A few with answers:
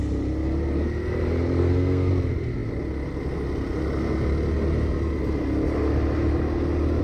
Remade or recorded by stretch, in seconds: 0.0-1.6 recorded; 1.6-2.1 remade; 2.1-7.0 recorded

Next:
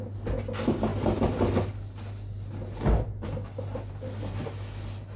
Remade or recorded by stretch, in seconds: 0.0-5.2 recorded

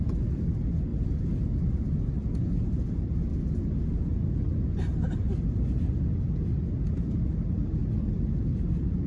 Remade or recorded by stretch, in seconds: 0.0-9.1 recorded

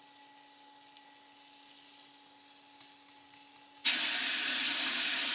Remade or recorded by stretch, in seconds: 0.0-5.3 recorded

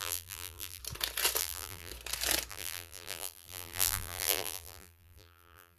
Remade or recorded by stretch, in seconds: 0.0-0.8 remade; 0.8-1.4 recorded; 1.4-1.9 remade; 1.9-2.5 recorded; 2.5-5.8 remade

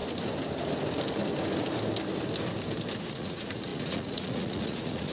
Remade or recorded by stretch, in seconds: 0.0-3.1 recorded; 3.1-5.1 remade